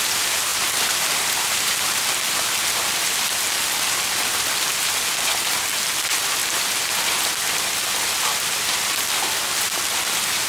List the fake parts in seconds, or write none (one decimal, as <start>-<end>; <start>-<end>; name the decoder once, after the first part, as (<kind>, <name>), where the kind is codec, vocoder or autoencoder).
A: 0.5-1.8 (vocoder, BigVGAN v2)